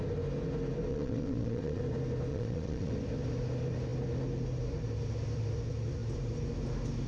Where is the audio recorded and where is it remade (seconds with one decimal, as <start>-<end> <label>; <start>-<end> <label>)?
0.0-0.9 recorded; 0.9-1.8 remade; 1.8-2.3 recorded; 2.3-2.9 remade; 2.9-7.1 recorded